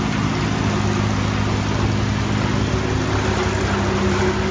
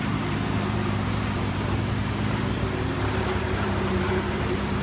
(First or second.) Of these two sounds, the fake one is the second